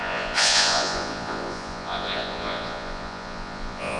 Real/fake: fake